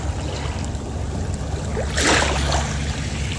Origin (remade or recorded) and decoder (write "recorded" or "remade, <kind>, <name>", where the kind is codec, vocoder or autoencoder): recorded